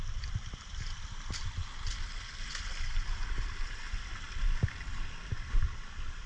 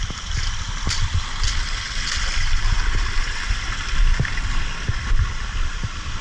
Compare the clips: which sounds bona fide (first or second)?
first